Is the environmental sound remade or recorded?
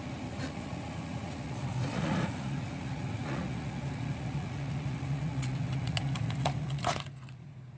remade